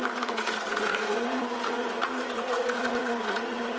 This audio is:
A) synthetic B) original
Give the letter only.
A